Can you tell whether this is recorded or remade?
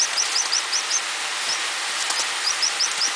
recorded